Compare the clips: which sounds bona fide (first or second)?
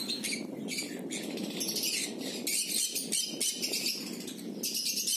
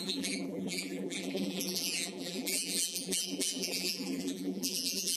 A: first